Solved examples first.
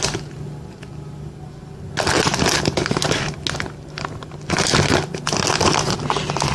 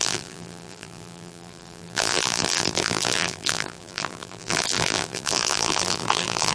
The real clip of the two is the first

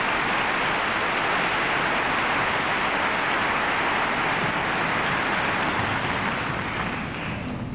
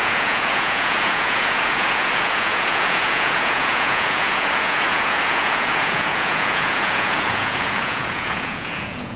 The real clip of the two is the first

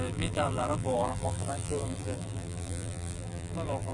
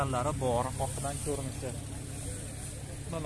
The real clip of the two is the second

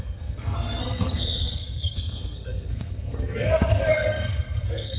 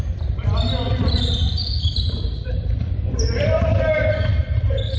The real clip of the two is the second